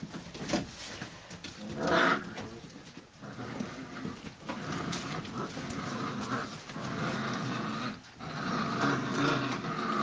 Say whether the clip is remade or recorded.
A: recorded